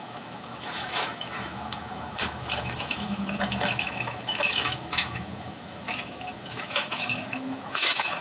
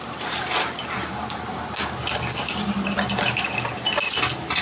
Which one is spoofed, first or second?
first